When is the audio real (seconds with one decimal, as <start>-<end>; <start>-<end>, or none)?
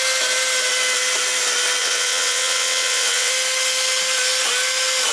0.0-1.8; 3.3-5.1